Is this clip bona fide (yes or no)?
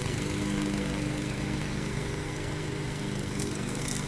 no